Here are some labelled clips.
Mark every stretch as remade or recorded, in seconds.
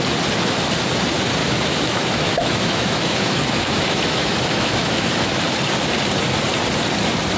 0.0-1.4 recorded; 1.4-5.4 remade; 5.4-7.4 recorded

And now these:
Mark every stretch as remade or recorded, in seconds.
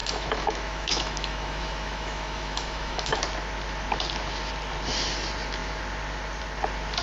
0.0-3.2 remade; 3.2-7.0 recorded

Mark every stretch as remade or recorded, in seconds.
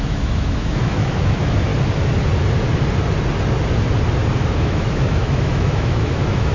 0.0-1.7 remade; 1.7-4.5 recorded; 4.5-6.5 remade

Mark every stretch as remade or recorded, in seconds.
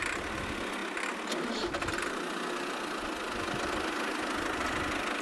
0.0-5.2 recorded